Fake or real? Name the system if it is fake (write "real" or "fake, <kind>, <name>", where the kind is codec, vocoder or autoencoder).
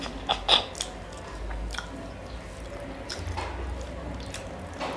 real